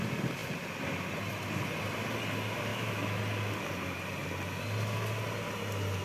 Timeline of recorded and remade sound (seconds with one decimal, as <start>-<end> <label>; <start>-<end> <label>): 0.0-2.7 recorded; 2.7-3.2 remade; 3.2-6.0 recorded